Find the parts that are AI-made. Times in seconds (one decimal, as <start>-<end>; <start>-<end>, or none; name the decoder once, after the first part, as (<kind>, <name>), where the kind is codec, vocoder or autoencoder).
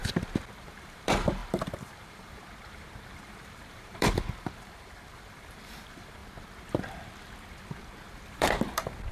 0.6-6.2 (vocoder, BigVGAN v2); 8.3-9.1